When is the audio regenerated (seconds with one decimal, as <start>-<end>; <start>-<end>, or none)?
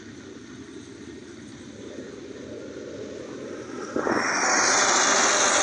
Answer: none